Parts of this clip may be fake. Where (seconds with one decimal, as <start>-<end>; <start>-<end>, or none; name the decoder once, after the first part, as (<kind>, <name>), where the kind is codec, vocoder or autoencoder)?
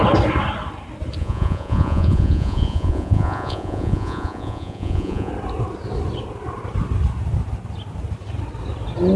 1.2-5.3 (vocoder, Vocos)